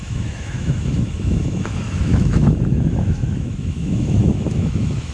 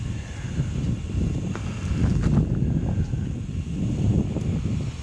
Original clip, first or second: second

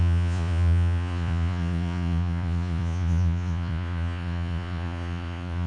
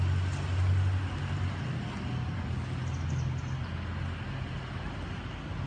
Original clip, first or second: second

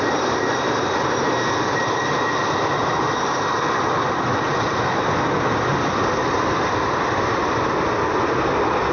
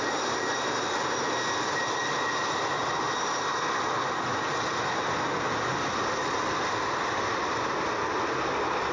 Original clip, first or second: second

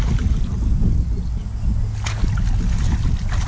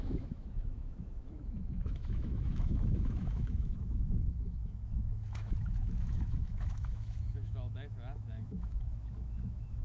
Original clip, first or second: first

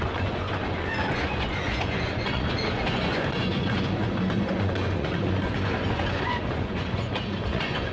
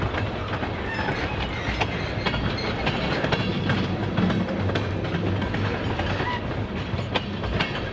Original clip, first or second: second